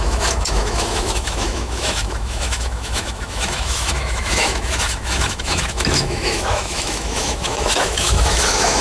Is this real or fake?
fake